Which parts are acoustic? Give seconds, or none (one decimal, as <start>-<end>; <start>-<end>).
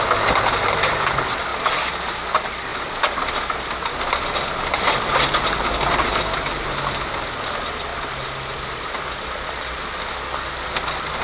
0.0-1.5; 2.2-2.7; 5.7-7.9; 8.8-11.2